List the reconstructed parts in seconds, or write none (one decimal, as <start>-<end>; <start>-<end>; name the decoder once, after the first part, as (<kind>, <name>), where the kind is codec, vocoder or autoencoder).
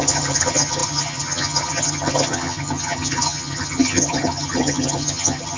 0.0-5.6 (vocoder, HiFi-GAN)